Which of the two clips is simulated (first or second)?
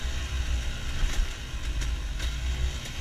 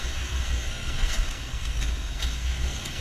second